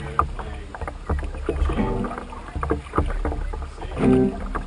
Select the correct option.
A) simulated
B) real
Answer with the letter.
B